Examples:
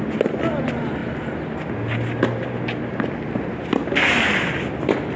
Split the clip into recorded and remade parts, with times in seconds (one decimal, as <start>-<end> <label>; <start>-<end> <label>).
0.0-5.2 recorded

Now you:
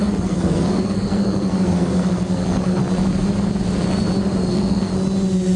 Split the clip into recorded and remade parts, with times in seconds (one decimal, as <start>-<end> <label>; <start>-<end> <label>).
0.0-2.8 remade; 2.8-4.5 recorded; 4.5-4.9 remade; 4.9-5.6 recorded

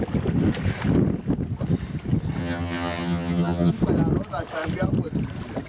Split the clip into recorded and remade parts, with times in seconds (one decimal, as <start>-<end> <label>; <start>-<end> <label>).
0.0-2.4 recorded; 2.4-3.7 remade; 3.7-5.7 recorded